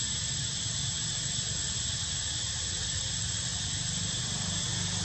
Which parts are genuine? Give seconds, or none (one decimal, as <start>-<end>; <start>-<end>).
0.0-5.0